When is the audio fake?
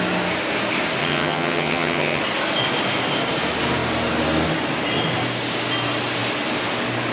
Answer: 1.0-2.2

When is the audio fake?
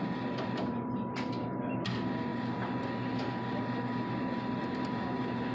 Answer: none